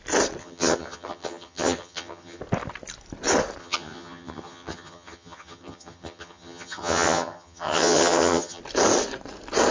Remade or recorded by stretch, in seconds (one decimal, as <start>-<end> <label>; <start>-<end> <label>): 0.0-0.4 recorded; 0.4-2.4 remade; 2.4-3.6 recorded; 3.6-8.6 remade; 8.6-9.7 recorded